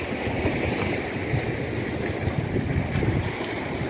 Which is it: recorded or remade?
remade